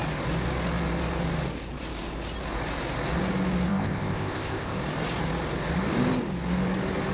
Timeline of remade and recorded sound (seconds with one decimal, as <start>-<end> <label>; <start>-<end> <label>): 0.0-3.7 recorded; 3.7-4.8 remade; 4.8-7.1 recorded